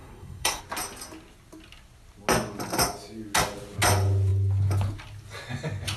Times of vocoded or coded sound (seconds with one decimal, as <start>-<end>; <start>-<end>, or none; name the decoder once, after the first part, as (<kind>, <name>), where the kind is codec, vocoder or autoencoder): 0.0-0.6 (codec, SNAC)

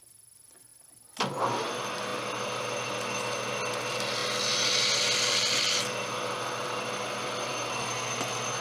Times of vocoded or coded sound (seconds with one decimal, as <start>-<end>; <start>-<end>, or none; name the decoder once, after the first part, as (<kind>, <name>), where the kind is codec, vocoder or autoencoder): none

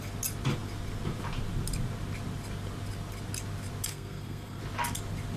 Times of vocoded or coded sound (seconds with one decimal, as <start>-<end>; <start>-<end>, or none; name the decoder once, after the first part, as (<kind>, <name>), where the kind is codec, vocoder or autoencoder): 3.9-4.6 (codec, SNAC)

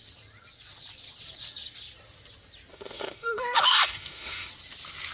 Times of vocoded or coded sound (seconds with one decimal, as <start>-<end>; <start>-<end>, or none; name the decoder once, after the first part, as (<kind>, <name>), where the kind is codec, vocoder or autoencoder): 2.7-4.5 (autoencoder, DAC-VAE)